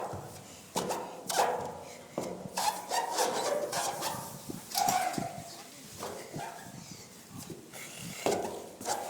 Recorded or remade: recorded